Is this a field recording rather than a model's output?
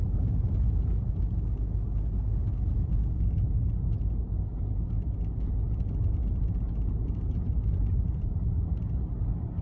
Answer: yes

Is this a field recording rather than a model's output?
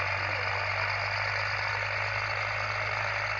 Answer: yes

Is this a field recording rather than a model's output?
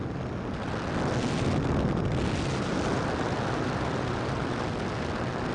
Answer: yes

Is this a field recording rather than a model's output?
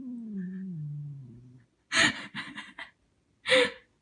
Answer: yes